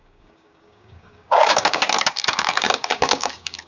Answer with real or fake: fake